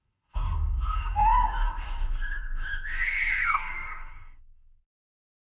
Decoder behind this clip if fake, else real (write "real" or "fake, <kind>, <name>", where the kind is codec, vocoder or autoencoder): fake, codec, DAC